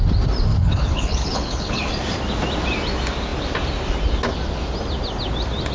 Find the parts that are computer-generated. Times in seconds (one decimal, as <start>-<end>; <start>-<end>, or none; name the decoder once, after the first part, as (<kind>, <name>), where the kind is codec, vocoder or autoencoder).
0.5-1.9 (codec, HILCodec)